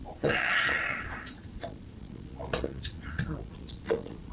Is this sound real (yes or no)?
no